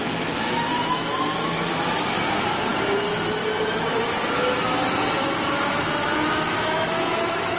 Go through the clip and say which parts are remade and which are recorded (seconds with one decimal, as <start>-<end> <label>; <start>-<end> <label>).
0.0-2.7 remade; 2.7-4.3 recorded; 4.3-7.6 remade